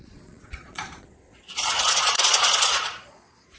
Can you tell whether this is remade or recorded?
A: remade